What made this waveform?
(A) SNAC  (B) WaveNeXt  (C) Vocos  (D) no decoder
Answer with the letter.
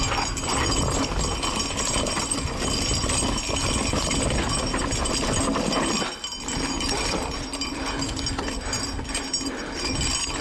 D